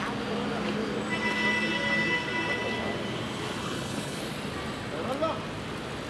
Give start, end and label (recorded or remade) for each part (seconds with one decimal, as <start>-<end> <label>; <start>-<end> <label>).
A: 0.0-3.6 recorded; 3.6-4.2 remade; 4.2-6.1 recorded